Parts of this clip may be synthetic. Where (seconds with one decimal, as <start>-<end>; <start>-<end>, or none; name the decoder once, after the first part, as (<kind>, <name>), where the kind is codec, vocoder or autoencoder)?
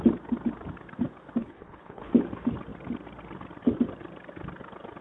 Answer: 1.4-2.1 (codec, HILCodec)